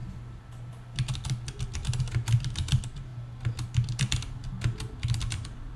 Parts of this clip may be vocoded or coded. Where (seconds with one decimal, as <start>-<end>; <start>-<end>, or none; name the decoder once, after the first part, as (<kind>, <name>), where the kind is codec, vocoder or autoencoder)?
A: none